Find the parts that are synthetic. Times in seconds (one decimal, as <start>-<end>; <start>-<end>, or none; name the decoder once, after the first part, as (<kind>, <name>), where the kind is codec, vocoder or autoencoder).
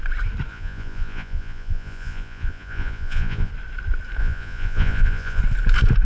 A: 0.5-3.5 (vocoder, Vocos); 4.2-5.4